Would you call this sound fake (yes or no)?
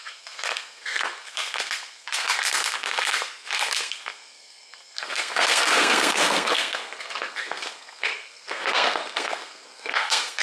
yes